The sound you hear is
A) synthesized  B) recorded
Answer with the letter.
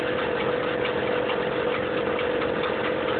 B